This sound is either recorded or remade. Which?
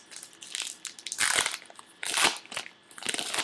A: recorded